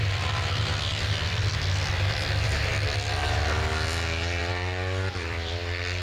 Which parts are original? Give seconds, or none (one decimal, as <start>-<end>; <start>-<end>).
3.7-4.4